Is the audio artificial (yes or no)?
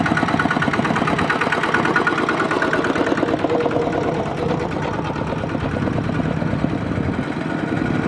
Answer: no